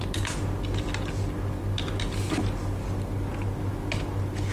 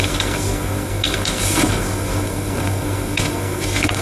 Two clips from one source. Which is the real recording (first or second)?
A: first